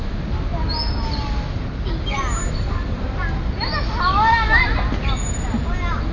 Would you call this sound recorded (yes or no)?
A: yes